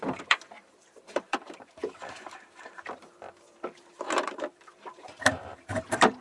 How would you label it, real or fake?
fake